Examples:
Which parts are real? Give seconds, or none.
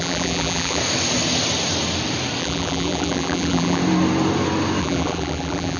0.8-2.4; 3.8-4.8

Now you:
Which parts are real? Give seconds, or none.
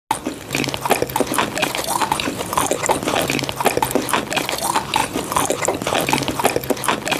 0.0-1.6; 2.5-7.2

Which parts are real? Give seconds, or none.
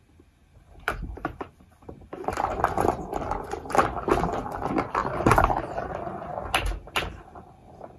0.0-0.4; 2.6-5.0; 5.9-8.0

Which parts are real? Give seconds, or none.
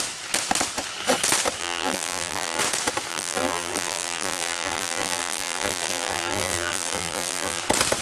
0.0-1.6; 2.6-3.1; 7.6-8.0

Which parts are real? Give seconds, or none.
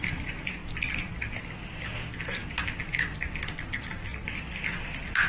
0.6-1.2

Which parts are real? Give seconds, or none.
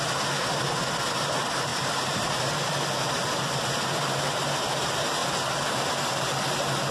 0.0-1.7; 2.4-6.9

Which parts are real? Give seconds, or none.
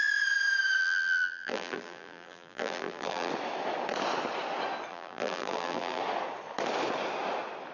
0.0-0.8; 3.3-4.9; 6.0-7.7